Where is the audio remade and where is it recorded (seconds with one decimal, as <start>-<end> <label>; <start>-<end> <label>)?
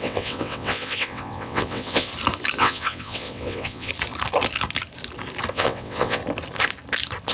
0.0-2.1 remade; 2.1-2.6 recorded; 2.6-3.9 remade; 3.9-5.5 recorded; 5.5-6.2 remade; 6.2-7.3 recorded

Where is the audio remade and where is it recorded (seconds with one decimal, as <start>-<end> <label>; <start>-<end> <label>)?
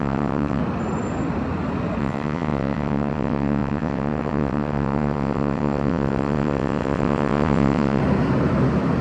0.0-0.6 remade; 0.6-2.0 recorded; 2.0-8.0 remade; 8.0-9.0 recorded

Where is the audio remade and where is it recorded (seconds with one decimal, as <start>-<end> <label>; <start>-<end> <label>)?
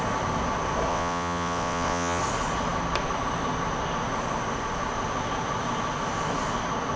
0.0-0.9 recorded; 0.9-2.2 remade; 2.2-7.0 recorded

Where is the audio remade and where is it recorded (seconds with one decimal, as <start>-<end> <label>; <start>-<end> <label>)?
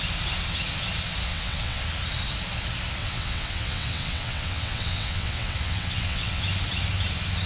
0.0-1.3 recorded; 1.3-1.8 remade; 1.8-3.0 recorded; 3.0-6.4 remade; 6.4-7.5 recorded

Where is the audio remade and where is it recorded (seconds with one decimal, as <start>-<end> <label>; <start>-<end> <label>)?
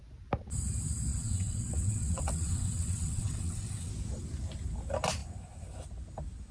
0.0-1.1 recorded; 1.1-3.9 remade; 3.9-6.5 recorded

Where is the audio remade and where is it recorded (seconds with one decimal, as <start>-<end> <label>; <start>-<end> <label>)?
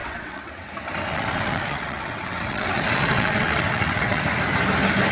0.0-0.7 remade; 0.7-1.1 recorded; 1.1-4.2 remade; 4.2-5.1 recorded